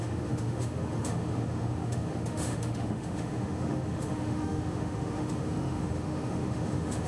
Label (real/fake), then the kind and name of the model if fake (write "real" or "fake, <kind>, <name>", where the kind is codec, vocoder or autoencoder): fake, autoencoder, DAC-VAE